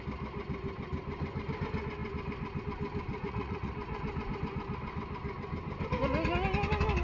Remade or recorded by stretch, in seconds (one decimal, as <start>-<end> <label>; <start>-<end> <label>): 0.0-3.1 recorded; 3.1-3.7 remade; 3.7-7.0 recorded